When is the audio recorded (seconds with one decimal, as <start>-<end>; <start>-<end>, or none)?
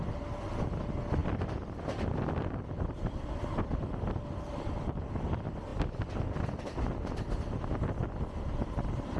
0.0-9.2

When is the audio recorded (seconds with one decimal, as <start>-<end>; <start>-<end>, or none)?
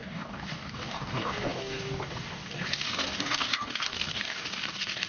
none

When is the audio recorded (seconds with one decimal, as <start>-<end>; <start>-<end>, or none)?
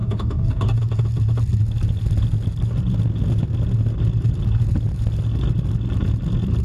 0.8-6.6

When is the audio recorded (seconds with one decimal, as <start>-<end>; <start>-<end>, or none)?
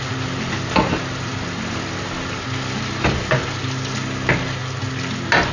0.0-5.5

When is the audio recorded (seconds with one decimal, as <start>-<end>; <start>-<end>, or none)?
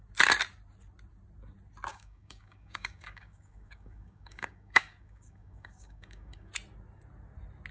0.0-1.9; 6.5-7.7